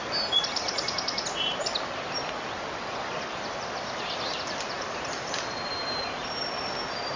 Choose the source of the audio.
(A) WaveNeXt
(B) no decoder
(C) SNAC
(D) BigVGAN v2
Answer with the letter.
B